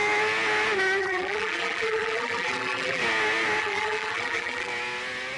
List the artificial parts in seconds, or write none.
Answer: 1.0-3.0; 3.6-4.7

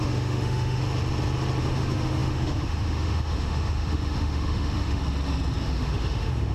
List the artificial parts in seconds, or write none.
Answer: 0.0-0.8; 1.6-5.0; 5.6-6.5

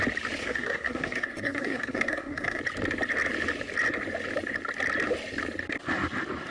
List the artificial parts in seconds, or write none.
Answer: 0.4-2.6

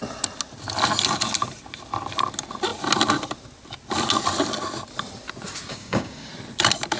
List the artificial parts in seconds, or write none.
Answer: 5.7-6.3

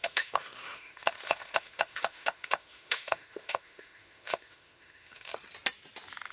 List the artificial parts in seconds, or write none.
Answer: 0.0-5.3

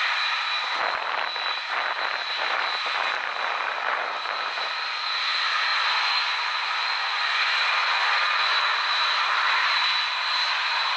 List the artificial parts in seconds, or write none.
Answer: 5.7-8.6